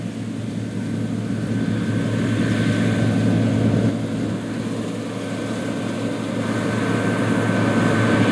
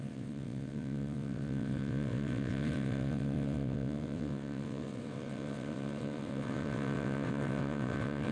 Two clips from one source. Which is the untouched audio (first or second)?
first